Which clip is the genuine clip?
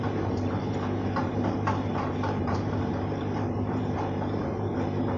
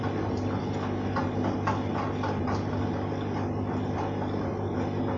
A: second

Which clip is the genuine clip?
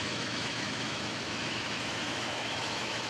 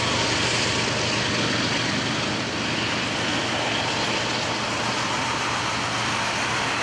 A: second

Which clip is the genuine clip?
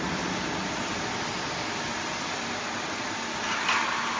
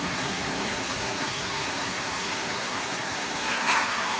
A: first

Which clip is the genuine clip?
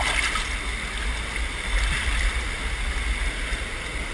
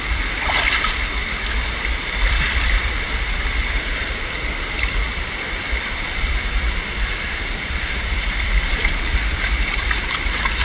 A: first